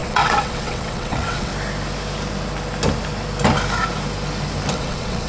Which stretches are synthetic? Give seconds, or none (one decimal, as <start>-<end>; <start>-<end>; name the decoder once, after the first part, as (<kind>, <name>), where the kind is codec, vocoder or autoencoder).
0.0-1.5 (vocoder, WaveNeXt); 4.7-5.3